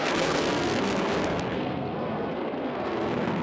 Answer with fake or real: fake